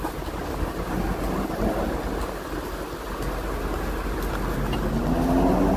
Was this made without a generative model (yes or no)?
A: yes